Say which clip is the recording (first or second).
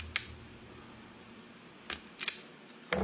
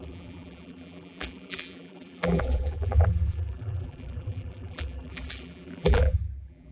first